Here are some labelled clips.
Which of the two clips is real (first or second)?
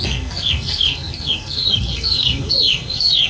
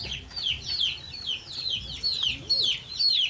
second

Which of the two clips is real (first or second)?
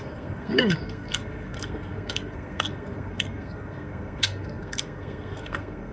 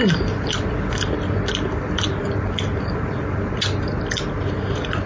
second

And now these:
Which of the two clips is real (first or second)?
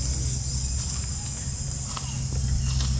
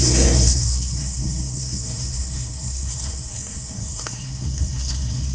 first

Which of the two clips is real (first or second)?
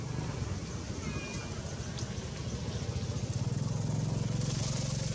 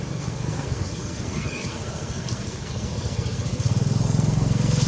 first